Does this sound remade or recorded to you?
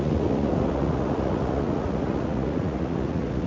remade